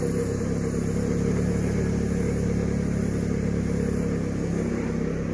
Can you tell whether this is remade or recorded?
recorded